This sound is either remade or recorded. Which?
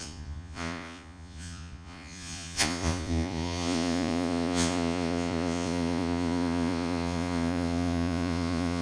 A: remade